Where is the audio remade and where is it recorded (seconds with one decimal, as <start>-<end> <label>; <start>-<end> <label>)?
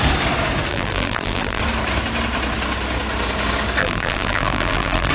0.0-0.7 recorded; 0.7-1.6 remade; 1.6-3.8 recorded; 3.8-5.1 remade